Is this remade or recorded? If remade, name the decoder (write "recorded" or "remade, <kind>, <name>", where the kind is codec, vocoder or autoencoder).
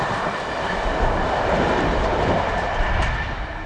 recorded